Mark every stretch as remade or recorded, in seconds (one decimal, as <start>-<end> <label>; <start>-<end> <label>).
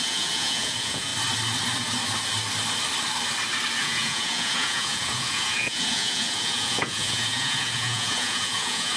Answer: 0.0-1.1 remade; 1.1-3.8 recorded; 3.8-9.0 remade